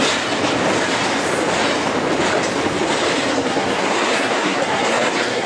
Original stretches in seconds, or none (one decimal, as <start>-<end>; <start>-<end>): 0.0-3.3

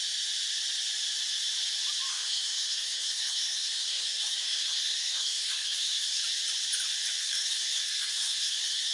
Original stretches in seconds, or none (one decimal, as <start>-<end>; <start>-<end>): 0.0-2.1; 6.2-7.2

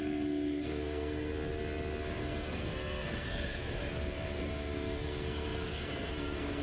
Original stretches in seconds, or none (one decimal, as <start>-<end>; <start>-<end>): 1.3-2.2

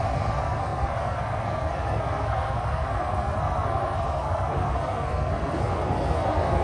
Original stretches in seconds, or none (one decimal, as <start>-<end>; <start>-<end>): none

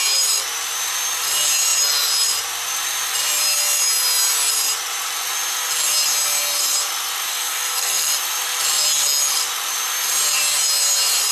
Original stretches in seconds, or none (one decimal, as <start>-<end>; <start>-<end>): 0.0-7.3; 8.1-11.3

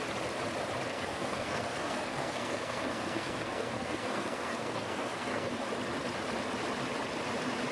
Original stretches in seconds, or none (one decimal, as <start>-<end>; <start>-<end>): 0.0-0.9; 5.5-7.7